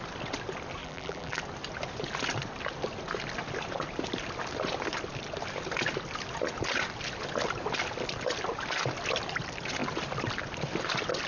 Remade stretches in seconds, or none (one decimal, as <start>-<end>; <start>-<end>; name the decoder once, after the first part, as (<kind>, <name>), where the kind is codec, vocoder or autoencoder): 0.8-1.4 (vocoder, BigVGAN v2)